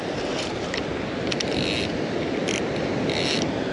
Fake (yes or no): no